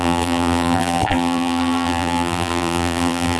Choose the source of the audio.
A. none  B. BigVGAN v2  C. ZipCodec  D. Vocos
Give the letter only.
B